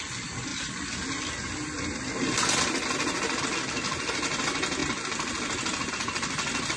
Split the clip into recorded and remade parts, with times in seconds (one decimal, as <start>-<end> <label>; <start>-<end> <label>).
0.0-6.8 recorded